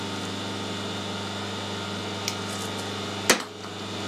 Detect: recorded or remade recorded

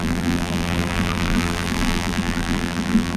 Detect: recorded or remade remade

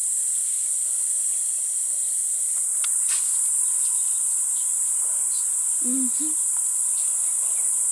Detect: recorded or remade recorded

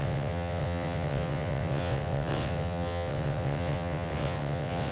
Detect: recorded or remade remade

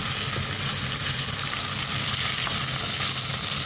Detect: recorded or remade recorded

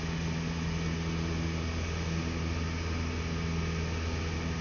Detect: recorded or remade recorded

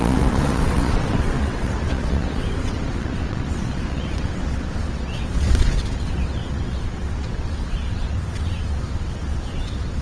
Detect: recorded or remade remade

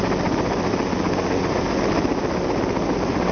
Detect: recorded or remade recorded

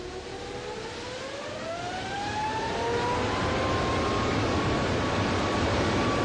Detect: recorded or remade recorded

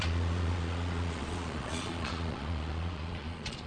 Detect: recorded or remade remade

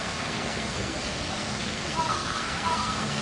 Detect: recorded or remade remade